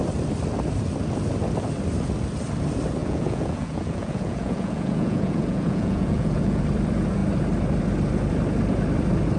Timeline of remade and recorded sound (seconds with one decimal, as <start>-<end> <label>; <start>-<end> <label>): 0.0-3.0 recorded; 3.0-6.6 remade; 6.6-9.4 recorded